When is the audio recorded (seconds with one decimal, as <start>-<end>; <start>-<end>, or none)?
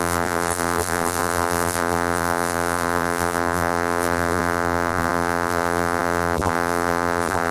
none